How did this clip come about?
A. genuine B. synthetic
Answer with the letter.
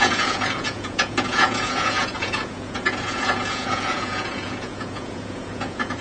B